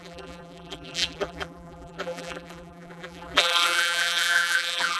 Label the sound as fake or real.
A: fake